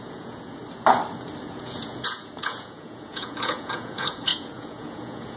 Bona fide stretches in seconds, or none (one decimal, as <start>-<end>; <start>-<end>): 0.6-1.4